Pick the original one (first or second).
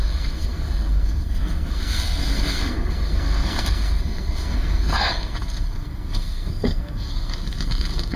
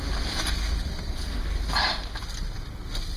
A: second